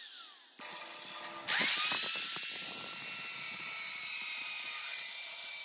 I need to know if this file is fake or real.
real